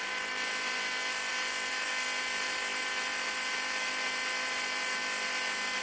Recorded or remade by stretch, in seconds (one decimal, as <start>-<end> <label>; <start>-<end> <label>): 0.0-5.8 recorded